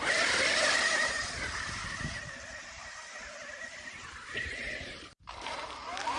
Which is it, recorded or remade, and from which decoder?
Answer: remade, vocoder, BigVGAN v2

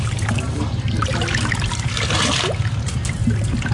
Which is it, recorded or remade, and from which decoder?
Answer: recorded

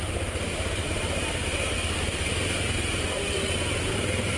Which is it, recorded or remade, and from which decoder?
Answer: remade, vocoder, BigVGAN v2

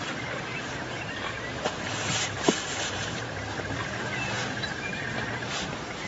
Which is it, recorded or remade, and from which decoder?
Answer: remade, vocoder, BigVGAN v2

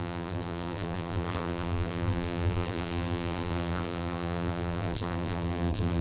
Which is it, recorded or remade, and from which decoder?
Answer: remade, vocoder, BigVGAN v2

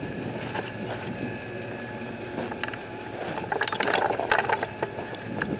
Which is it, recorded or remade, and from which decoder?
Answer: recorded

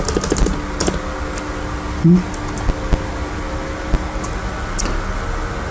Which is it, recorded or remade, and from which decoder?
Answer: recorded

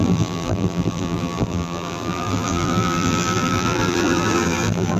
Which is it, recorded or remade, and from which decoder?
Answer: remade, vocoder, BigVGAN v2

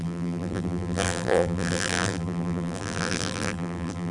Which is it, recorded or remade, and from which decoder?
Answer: remade, vocoder, BigVGAN v2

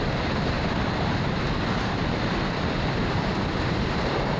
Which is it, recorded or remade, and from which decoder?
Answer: remade, vocoder, BigVGAN v2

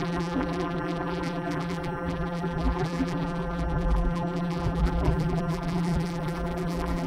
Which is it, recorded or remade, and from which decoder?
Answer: remade, vocoder, BigVGAN v2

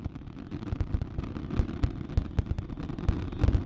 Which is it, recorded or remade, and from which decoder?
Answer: recorded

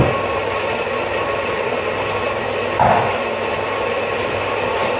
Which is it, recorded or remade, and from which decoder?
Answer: recorded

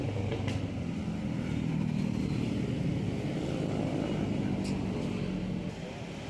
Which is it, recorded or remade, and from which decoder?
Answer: recorded